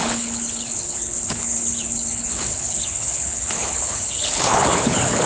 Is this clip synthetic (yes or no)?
yes